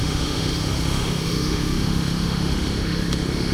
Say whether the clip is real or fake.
fake